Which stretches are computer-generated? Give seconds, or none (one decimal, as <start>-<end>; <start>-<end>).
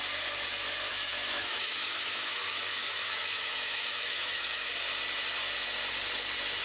0.9-4.7